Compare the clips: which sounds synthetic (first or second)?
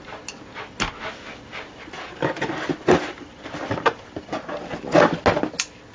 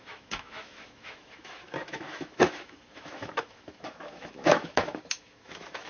second